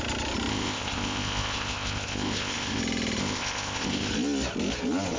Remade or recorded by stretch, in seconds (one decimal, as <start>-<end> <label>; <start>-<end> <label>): 0.0-0.5 recorded; 0.5-2.8 remade; 2.8-3.2 recorded; 3.2-4.1 remade; 4.1-5.2 recorded